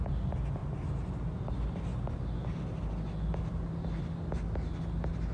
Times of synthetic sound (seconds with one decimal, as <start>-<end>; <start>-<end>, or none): none